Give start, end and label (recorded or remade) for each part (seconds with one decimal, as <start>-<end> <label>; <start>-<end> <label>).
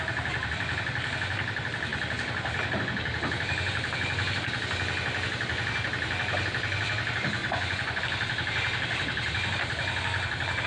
0.0-7.4 recorded; 7.4-8.0 remade; 8.0-10.7 recorded